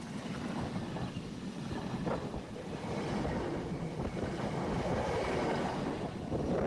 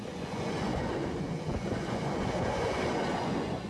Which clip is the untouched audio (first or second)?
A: first